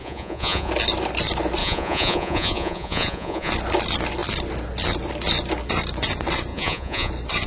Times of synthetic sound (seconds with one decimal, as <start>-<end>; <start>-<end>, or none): 0.0-0.7; 1.6-3.5; 6.5-7.1